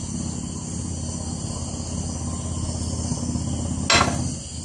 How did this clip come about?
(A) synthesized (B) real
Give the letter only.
B